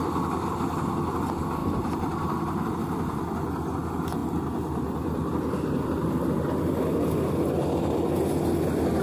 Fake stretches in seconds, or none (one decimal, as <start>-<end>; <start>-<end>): 1.6-2.7